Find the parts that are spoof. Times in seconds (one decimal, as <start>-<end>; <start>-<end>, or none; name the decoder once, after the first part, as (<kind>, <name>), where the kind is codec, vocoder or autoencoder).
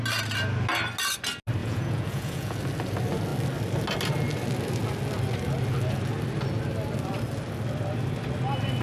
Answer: 1.6-2.6 (vocoder, Vocos)